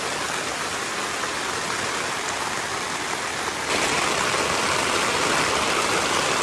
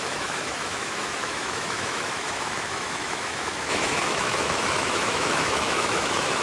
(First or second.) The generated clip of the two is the second